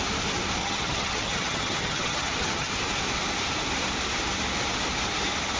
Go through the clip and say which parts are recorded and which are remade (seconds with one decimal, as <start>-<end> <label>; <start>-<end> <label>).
0.0-0.6 recorded; 0.6-2.7 remade; 2.7-5.6 recorded